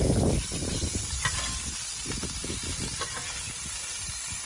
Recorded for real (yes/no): yes